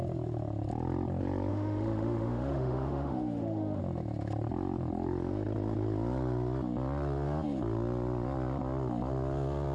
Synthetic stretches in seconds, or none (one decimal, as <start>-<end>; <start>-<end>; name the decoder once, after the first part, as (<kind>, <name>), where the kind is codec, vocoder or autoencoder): 1.5-3.8 (autoencoder, DAC-VAE)